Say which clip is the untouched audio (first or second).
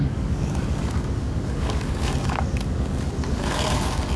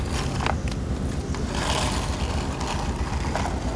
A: second